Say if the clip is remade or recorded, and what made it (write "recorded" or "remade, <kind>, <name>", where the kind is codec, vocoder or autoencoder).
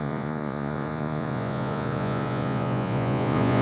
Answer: remade, vocoder, Vocos